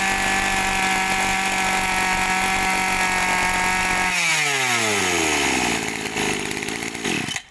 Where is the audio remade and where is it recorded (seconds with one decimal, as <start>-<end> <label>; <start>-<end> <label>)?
0.0-7.5 recorded